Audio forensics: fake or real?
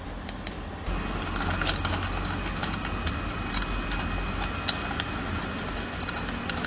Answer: real